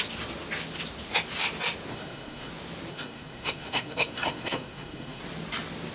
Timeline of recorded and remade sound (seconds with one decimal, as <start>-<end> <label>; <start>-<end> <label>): 0.0-1.9 recorded; 1.9-2.5 remade; 2.5-2.9 recorded; 2.9-5.2 remade; 5.2-5.9 recorded